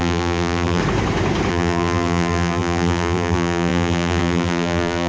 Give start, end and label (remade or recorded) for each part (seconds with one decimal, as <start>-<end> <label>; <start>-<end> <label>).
0.0-0.8 remade; 0.8-1.5 recorded; 1.5-5.1 remade

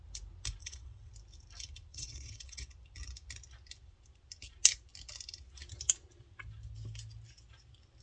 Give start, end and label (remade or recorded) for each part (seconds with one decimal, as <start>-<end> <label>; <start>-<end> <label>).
0.0-0.6 recorded; 0.6-1.1 remade; 1.1-1.9 recorded; 1.9-2.7 remade; 2.7-8.0 recorded

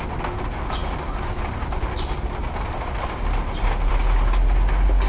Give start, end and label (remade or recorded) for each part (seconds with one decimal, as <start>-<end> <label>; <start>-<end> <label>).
0.0-5.1 recorded

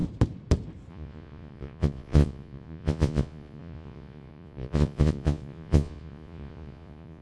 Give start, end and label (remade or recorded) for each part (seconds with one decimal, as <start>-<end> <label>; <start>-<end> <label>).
0.0-0.9 recorded; 0.9-7.2 remade

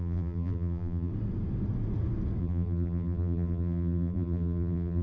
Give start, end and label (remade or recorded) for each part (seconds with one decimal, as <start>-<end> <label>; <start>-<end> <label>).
0.0-1.1 remade; 1.1-2.4 recorded; 2.4-5.0 remade

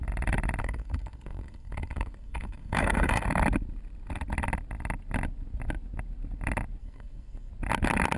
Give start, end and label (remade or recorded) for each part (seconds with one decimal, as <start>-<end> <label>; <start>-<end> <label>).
0.0-0.6 recorded; 0.6-3.2 remade; 3.2-6.8 recorded; 6.8-7.5 remade; 7.5-8.2 recorded

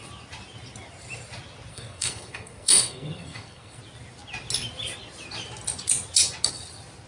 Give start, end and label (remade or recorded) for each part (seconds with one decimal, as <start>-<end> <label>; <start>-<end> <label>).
0.0-1.7 recorded; 1.7-3.8 remade; 3.8-7.1 recorded

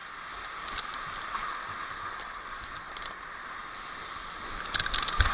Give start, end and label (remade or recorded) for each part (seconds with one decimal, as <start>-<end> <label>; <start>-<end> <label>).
0.0-5.3 recorded